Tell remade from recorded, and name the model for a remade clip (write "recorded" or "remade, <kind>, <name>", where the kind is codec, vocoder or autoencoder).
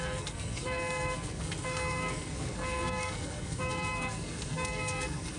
remade, codec, SNAC